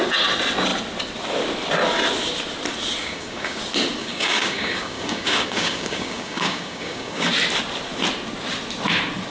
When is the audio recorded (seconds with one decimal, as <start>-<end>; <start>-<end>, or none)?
0.0-3.0; 3.6-4.0; 7.3-9.3